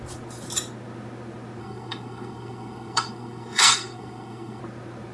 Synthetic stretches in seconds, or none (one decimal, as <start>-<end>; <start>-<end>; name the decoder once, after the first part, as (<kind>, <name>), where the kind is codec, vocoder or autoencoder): 1.6-4.6 (codec, SNAC)